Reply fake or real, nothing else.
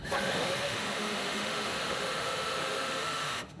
fake